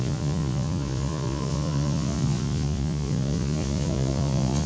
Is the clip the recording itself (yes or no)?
no